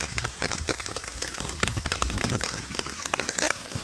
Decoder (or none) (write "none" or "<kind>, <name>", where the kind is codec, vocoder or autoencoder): codec, SNAC